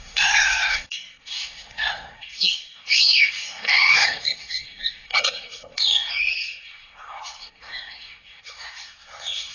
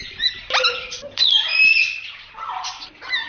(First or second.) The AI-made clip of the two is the first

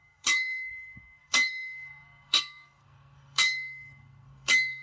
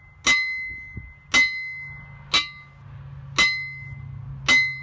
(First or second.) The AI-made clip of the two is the first